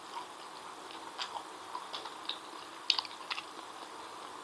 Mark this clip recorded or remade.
recorded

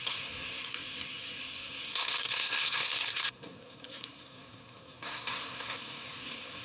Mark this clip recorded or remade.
remade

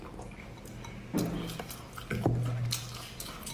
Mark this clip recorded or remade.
recorded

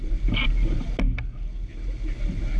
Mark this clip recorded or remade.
recorded